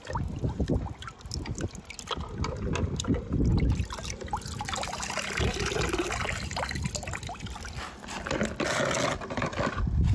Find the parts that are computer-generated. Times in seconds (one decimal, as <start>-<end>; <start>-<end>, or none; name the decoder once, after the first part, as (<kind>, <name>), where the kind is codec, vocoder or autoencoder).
none

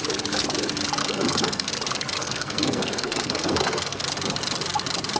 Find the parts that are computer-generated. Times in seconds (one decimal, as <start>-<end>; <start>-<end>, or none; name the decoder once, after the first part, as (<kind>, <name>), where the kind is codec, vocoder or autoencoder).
1.0-1.7 (codec, SNAC); 2.2-4.0

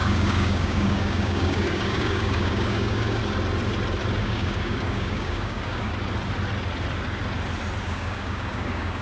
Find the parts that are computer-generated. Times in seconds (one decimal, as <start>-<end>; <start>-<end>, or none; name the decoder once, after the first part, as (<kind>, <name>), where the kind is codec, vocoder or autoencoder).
0.0-3.2 (codec, DAC); 4.2-5.9; 7.8-9.0